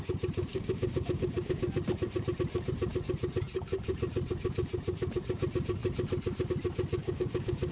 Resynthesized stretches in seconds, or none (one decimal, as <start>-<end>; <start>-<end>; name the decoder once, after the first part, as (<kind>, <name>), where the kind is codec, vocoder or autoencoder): 0.5-1.6 (codec, DAC); 7.0-7.7